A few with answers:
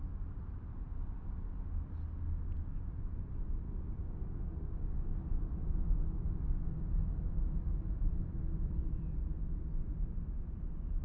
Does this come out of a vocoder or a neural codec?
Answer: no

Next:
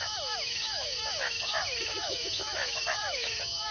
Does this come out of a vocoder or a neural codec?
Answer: yes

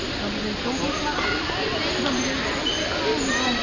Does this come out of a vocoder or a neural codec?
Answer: no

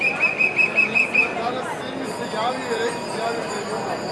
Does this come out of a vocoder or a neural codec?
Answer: no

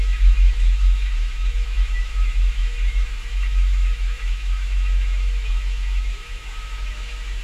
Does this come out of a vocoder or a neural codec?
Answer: yes